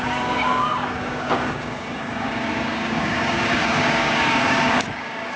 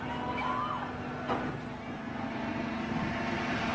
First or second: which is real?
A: second